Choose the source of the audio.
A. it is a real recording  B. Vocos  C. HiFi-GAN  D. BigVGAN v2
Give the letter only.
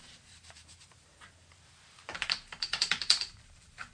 D